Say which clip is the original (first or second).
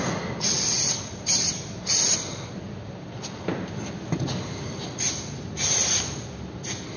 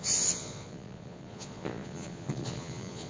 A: first